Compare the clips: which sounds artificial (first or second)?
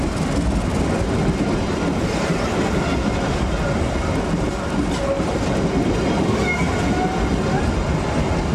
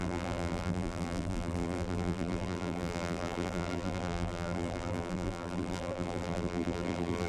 second